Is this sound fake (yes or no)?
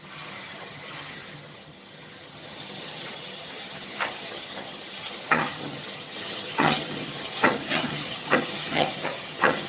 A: yes